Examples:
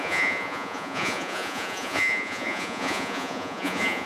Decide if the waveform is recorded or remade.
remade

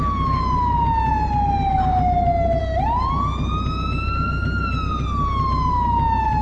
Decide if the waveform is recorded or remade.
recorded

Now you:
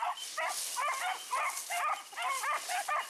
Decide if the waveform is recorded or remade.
recorded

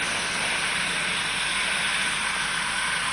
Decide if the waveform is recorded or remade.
recorded